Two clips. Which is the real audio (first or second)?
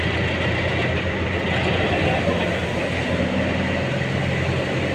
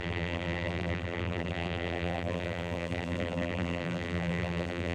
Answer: first